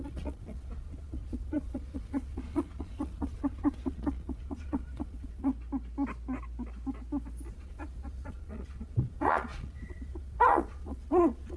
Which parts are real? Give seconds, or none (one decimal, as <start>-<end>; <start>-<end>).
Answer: 5.5-7.5